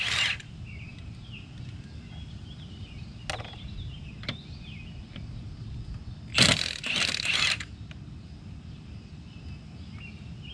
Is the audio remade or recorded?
recorded